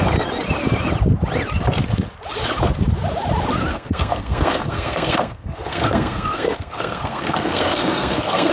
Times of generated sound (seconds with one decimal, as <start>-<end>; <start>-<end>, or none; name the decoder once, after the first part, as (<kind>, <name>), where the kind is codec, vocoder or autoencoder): 3.7-8.5 (codec, SNAC)